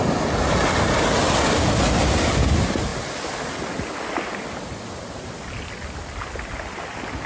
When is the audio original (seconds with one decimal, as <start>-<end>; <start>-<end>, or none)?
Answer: 0.0-7.3